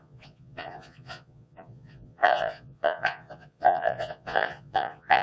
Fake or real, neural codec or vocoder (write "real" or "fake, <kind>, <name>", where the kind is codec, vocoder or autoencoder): fake, vocoder, Vocos